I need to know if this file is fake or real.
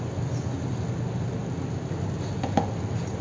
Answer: real